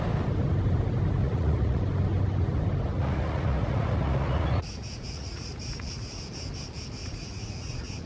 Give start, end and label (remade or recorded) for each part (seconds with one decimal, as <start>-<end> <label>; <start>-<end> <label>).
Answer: 0.0-1.2 recorded; 1.2-1.8 remade; 1.8-2.9 recorded; 2.9-6.2 remade; 6.2-7.0 recorded; 7.0-8.1 remade